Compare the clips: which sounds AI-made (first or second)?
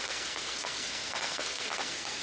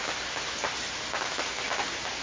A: first